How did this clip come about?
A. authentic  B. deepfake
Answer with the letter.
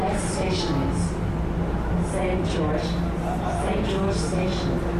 A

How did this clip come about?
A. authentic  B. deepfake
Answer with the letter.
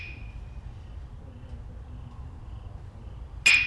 A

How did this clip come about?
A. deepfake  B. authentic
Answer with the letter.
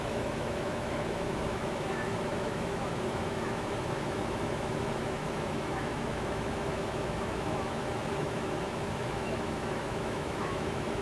A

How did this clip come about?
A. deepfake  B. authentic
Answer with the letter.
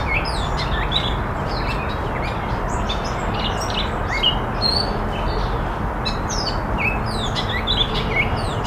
B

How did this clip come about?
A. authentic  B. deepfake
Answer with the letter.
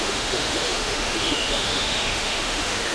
B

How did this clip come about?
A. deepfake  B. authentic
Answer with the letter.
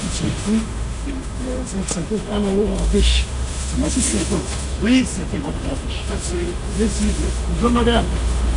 A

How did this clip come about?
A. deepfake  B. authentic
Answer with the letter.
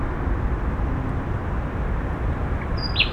B